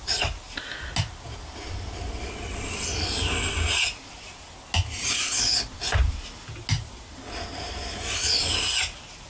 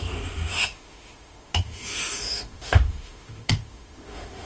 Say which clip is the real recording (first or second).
first